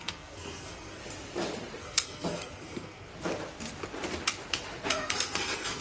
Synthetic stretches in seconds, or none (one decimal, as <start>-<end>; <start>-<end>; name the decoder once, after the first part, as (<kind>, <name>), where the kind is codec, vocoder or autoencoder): 0.0-1.0 (codec, SNAC); 1.8-3.1; 4.9-5.8